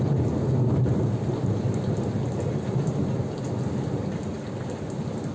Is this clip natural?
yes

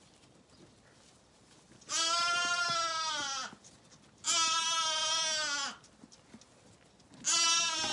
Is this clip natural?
yes